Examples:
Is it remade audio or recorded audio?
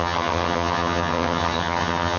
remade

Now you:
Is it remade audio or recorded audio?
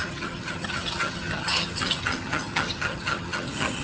remade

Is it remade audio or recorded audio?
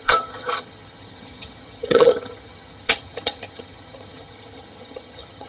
remade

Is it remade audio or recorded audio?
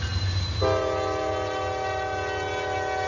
recorded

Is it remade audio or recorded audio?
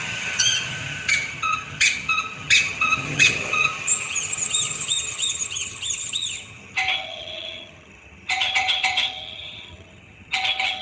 remade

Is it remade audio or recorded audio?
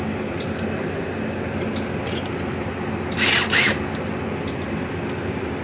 recorded